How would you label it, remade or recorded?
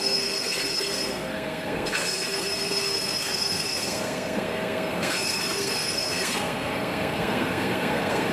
remade